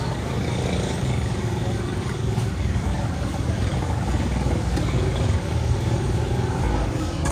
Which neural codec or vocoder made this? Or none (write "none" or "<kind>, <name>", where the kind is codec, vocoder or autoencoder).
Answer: codec, DAC